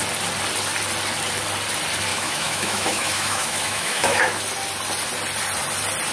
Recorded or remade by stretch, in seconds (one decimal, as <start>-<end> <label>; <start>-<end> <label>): 0.0-2.1 recorded; 2.1-4.4 remade; 4.4-6.1 recorded